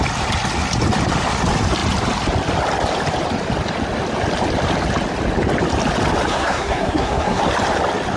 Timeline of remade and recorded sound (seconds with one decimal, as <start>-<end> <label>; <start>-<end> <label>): 0.0-6.3 recorded; 6.3-7.4 remade; 7.4-8.2 recorded